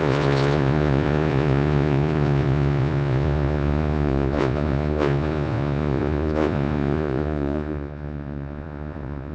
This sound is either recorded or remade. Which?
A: remade